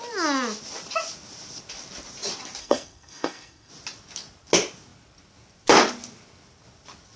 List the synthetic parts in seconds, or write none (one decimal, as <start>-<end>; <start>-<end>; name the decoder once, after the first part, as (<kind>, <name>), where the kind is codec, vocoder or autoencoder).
2.6-3.7 (codec, SNAC)